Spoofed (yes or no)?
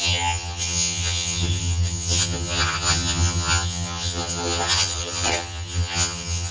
yes